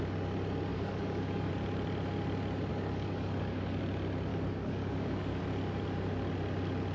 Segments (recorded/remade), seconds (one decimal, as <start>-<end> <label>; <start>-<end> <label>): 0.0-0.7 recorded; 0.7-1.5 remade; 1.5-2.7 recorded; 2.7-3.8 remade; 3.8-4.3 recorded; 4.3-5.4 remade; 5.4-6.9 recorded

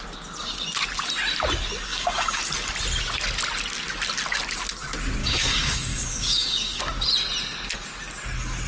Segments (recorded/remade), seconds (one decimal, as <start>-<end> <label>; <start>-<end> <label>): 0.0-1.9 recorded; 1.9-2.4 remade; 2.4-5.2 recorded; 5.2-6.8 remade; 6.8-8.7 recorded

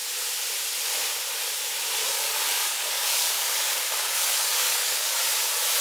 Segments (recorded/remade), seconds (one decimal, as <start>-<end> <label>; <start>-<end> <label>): 0.0-2.0 recorded; 2.0-5.2 remade; 5.2-5.8 recorded

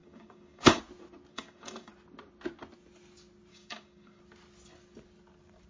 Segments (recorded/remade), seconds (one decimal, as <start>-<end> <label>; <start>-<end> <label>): 0.0-0.8 remade; 0.8-1.3 recorded; 1.3-1.9 remade; 1.9-3.5 recorded; 3.5-4.2 remade; 4.2-5.7 recorded

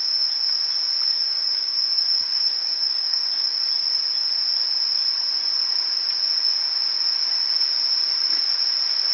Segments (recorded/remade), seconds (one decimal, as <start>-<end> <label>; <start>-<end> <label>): 0.0-1.1 recorded; 1.1-3.6 remade; 3.6-9.1 recorded